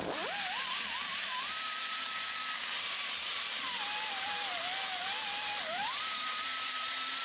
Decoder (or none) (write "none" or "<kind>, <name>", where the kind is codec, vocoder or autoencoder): vocoder, BigVGAN v2